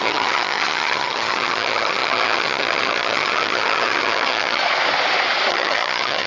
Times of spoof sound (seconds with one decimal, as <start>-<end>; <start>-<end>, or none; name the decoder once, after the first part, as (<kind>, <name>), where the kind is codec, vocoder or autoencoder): 0.0-4.6 (vocoder, HiFi-GAN); 5.5-6.3